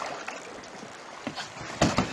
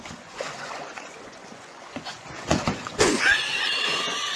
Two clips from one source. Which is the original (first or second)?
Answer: first